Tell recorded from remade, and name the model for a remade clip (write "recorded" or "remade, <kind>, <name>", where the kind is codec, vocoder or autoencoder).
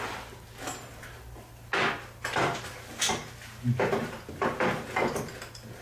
recorded